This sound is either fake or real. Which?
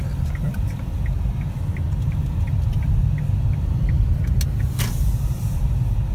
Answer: real